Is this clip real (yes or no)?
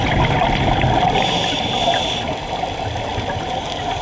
yes